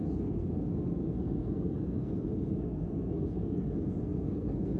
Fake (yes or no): yes